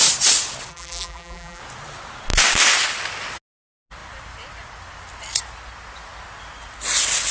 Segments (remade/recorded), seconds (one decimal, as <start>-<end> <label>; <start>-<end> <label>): 0.0-0.7 recorded; 0.7-1.6 remade; 1.6-7.3 recorded